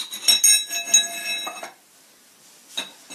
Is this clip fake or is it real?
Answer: real